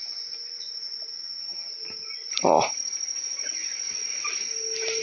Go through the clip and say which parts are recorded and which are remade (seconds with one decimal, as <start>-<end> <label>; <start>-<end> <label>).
0.0-1.1 recorded; 1.1-1.7 remade; 1.7-5.0 recorded